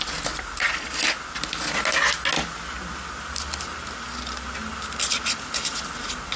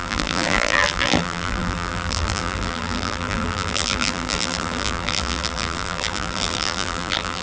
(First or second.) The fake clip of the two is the second